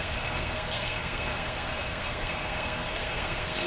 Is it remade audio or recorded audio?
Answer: remade